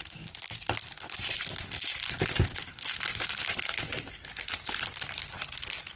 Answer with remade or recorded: recorded